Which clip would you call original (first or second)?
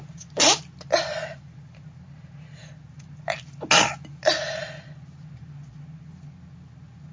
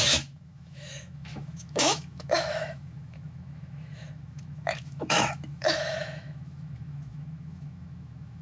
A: first